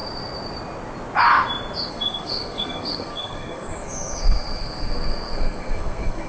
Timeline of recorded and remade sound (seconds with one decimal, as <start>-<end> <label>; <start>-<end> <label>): 0.0-1.9 recorded; 1.9-6.3 remade